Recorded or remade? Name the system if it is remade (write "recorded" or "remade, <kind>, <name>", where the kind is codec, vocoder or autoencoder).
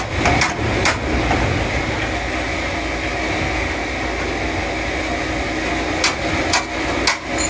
recorded